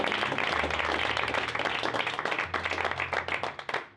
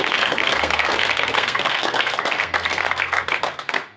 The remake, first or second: second